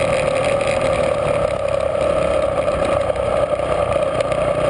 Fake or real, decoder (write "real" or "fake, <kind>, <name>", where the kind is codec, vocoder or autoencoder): fake, vocoder, BigVGAN v2